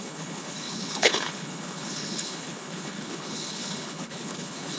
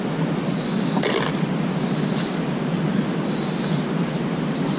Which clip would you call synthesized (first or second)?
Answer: first